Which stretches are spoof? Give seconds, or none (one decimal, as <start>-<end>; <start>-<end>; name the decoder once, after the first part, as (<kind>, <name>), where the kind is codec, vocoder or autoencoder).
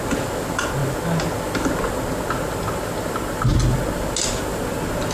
none